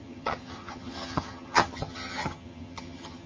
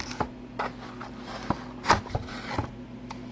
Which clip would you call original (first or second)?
second